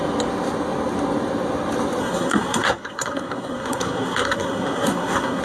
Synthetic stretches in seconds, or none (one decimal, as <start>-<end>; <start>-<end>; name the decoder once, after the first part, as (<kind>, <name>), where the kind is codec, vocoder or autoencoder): 2.0-5.4 (codec, SNAC)